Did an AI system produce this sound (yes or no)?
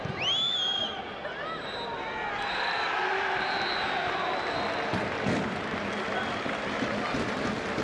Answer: no